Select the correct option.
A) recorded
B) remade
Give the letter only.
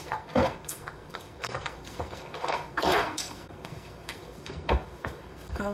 B